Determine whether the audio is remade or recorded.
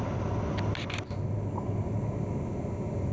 recorded